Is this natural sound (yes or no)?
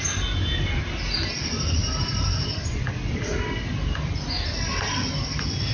yes